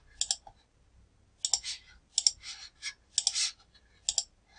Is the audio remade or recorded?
recorded